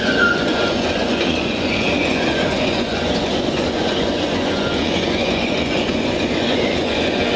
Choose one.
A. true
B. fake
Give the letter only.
B